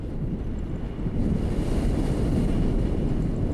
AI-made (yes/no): no